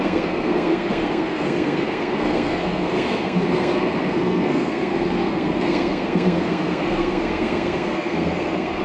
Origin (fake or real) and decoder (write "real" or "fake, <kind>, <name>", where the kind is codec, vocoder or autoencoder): fake, codec, SNAC